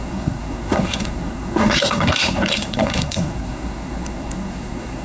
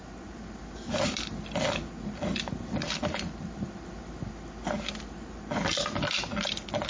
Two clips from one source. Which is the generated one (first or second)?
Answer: first